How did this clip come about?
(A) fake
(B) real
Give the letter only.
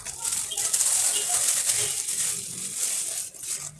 B